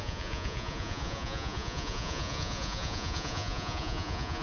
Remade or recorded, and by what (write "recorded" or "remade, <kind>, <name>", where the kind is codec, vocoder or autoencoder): remade, vocoder, Vocos